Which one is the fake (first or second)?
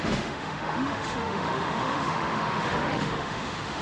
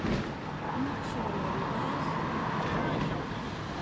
first